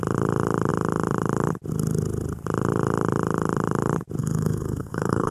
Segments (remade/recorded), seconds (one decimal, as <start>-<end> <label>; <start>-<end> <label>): 0.0-4.2 recorded; 4.2-5.3 remade